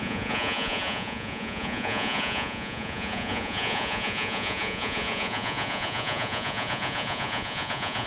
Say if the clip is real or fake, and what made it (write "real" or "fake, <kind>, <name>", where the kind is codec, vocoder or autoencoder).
fake, vocoder, Vocos